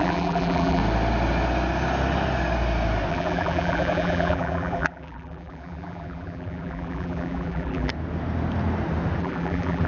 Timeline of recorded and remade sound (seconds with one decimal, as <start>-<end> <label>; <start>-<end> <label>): 0.0-0.8 remade; 0.8-3.1 recorded; 3.1-7.9 remade; 7.9-9.2 recorded; 9.2-9.9 remade